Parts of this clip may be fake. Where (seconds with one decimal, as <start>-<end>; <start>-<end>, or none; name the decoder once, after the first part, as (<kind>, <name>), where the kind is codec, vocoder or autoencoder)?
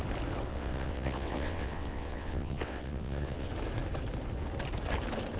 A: 0.5-3.5 (vocoder, WaveNeXt)